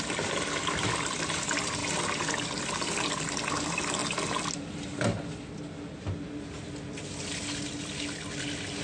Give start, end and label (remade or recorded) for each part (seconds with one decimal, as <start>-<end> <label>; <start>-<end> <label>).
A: 0.0-8.8 recorded